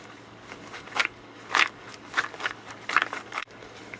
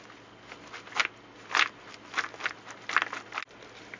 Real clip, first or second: second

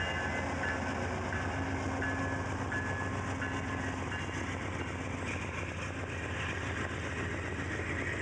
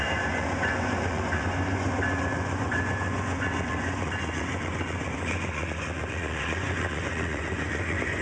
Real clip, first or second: first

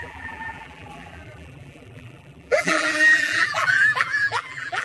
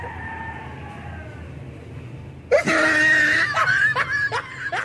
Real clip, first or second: second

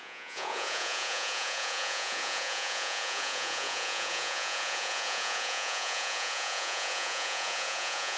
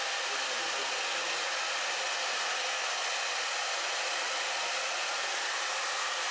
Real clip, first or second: second